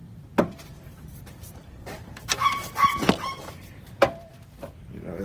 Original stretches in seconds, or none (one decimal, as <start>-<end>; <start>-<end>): none